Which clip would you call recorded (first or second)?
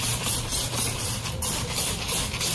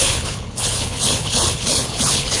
first